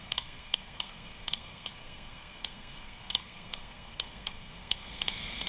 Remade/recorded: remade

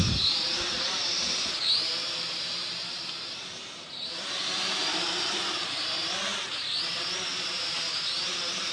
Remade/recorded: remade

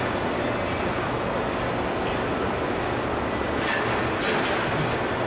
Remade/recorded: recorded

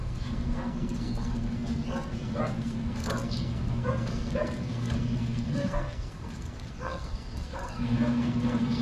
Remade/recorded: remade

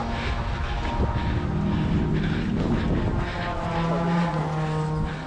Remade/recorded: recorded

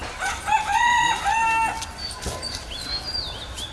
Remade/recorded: recorded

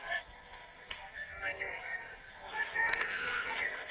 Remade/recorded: remade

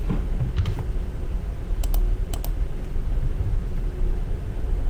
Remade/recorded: recorded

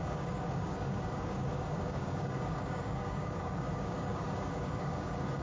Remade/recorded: remade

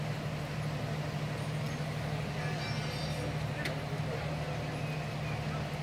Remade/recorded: recorded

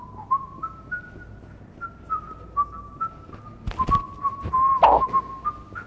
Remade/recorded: recorded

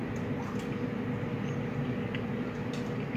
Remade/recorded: recorded